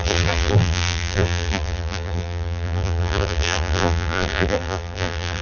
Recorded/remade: remade